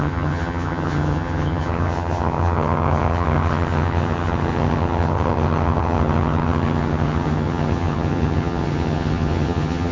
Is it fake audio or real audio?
fake